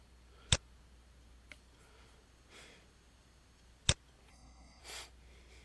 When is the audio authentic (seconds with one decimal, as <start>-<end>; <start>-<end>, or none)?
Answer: 0.0-4.3; 4.8-5.6